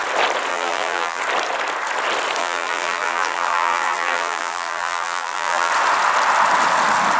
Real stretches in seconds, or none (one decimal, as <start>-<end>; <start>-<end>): 0.0-0.5; 1.2-2.4; 5.7-7.2